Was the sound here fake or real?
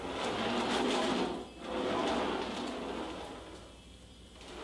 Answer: real